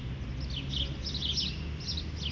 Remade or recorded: recorded